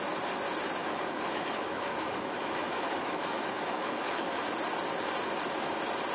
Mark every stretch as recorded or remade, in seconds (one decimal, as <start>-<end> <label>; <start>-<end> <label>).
0.0-0.8 recorded; 0.8-4.4 remade; 4.4-6.1 recorded